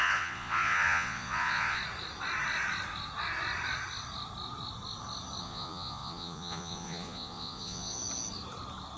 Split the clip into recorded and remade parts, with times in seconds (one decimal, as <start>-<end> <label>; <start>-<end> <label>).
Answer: 0.0-1.8 remade; 1.8-5.4 recorded; 5.4-8.0 remade; 8.0-9.0 recorded

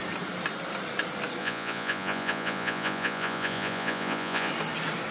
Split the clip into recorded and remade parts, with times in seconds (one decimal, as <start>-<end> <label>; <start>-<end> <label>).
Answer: 0.0-1.4 recorded; 1.4-4.5 remade; 4.5-5.1 recorded